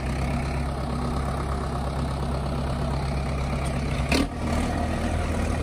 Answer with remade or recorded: recorded